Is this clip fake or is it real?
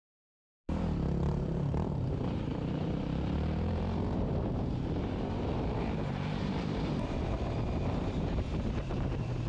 fake